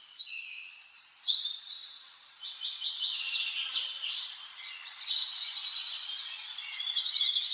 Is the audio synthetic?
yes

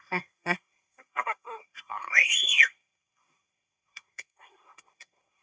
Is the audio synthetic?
yes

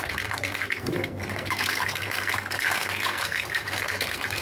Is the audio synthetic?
yes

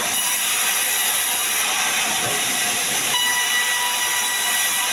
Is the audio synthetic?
no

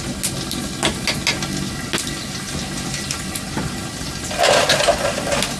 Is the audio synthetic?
no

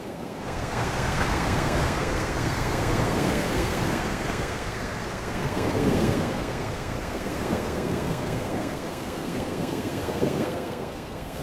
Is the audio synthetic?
yes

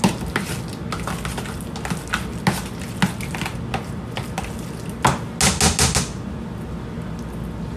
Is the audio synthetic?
no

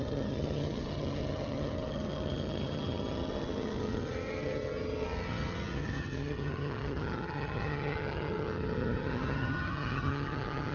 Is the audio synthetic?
yes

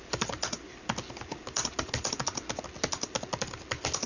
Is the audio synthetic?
no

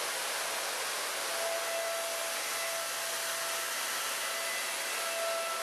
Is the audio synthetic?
no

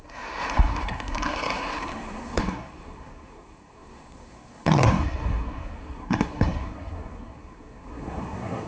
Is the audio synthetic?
yes